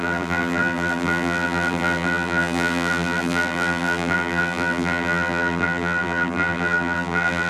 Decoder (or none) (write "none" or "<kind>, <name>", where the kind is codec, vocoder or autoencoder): vocoder, BigVGAN v2